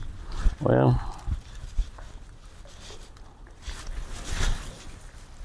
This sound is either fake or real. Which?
real